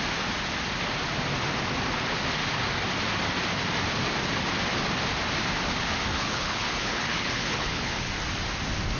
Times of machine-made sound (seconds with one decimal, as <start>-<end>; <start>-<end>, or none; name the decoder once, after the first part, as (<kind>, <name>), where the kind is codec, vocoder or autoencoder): 6.1-8.1 (codec, HILCodec)